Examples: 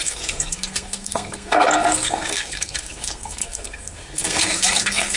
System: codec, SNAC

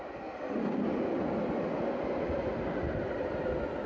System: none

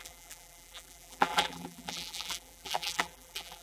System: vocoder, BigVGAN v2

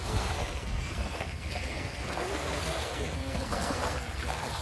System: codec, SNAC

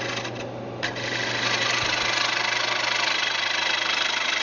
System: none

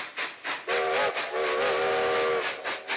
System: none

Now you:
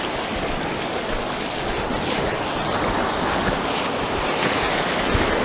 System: none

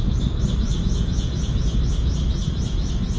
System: autoencoder, DAC-VAE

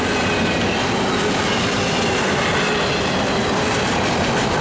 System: none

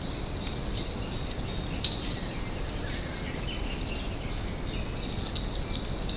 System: none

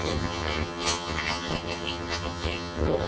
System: vocoder, HiFi-GAN